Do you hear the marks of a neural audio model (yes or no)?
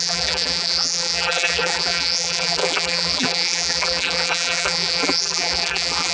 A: yes